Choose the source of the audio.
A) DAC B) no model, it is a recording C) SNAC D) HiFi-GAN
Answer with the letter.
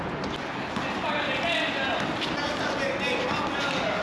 B